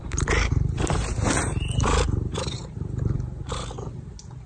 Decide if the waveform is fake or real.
fake